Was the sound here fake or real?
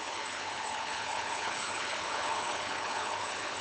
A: fake